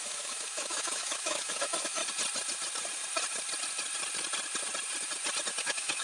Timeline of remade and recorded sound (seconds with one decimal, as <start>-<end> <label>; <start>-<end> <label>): 0.0-2.0 remade; 2.0-5.6 recorded; 5.6-6.0 remade